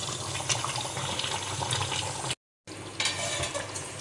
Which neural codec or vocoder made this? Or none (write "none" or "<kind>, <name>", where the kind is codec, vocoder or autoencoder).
none